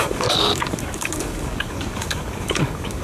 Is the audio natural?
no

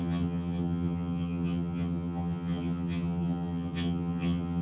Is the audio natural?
no